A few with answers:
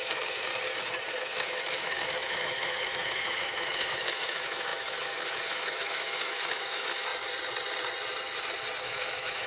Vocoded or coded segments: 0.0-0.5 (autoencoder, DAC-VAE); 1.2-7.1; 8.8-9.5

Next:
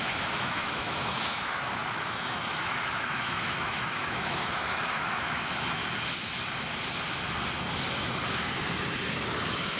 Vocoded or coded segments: 0.0-5.8 (autoencoder, DAC-VAE); 9.1-9.8